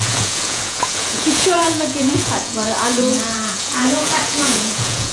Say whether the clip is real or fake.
fake